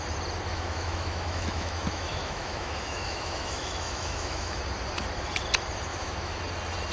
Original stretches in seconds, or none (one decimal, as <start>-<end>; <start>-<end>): 0.0-0.5; 4.6-5.9; 6.4-6.9